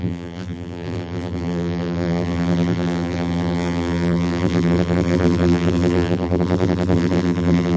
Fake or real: fake